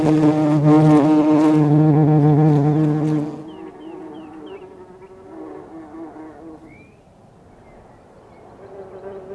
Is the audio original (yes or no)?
yes